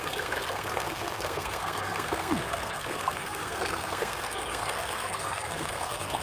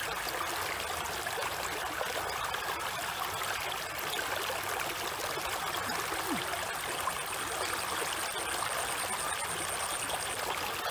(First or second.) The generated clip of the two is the first